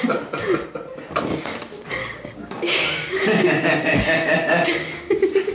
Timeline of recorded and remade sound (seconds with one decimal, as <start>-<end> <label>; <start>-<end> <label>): 0.0-2.0 recorded; 2.0-5.1 remade; 5.1-5.5 recorded